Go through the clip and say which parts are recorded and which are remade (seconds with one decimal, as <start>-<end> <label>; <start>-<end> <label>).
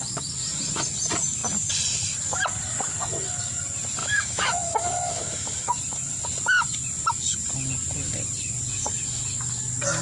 0.0-4.0 recorded; 4.0-5.8 remade; 5.8-10.0 recorded